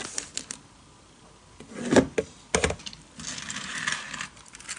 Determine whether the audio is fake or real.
real